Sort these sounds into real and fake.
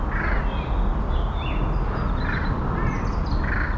real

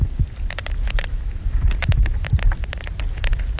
real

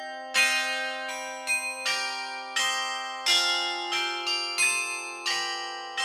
real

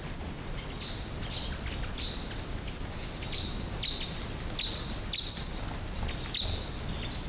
real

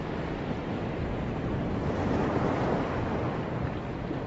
fake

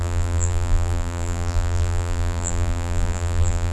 fake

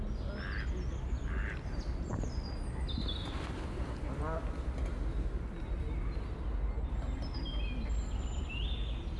real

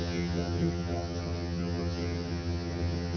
fake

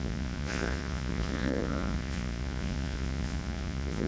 fake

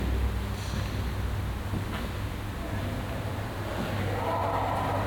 real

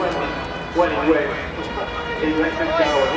real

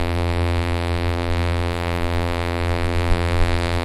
fake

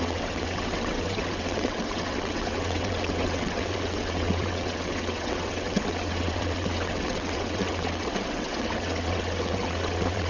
fake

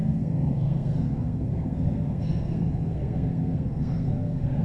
fake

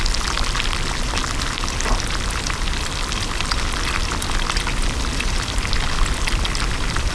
real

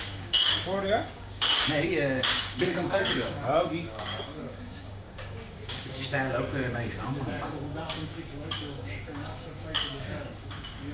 fake